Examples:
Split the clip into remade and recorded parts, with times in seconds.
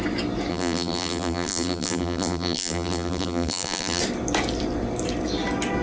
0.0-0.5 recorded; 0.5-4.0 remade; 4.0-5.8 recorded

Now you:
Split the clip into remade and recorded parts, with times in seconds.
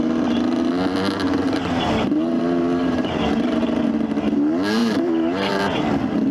0.0-1.4 recorded; 1.4-3.9 remade; 3.9-4.8 recorded; 4.8-5.5 remade; 5.5-6.3 recorded